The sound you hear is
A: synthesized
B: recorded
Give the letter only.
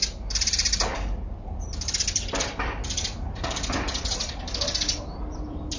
A